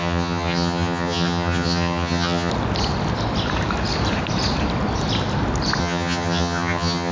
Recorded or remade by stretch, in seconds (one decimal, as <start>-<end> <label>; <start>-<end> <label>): 0.0-2.5 remade; 2.5-5.8 recorded; 5.8-7.1 remade

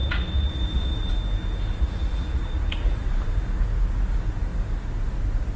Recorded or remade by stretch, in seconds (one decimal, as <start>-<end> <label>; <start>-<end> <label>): 0.0-1.1 remade; 1.1-1.7 recorded; 1.7-3.1 remade; 3.1-5.6 recorded

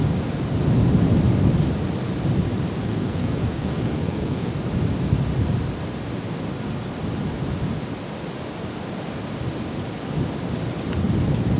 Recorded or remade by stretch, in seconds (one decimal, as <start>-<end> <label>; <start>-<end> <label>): 0.0-2.8 recorded; 2.8-4.5 remade; 4.5-11.6 recorded

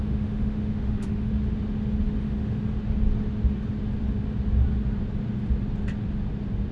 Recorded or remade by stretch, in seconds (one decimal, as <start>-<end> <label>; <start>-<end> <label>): 0.0-1.3 remade; 1.3-2.2 recorded; 2.2-2.6 remade; 2.6-6.7 recorded

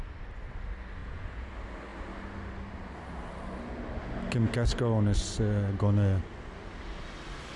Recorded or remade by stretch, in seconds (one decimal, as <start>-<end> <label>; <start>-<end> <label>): 0.0-1.0 recorded; 1.0-1.5 remade; 1.5-7.6 recorded